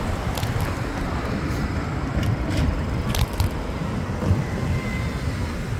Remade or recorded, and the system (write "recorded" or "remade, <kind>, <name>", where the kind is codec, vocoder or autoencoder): recorded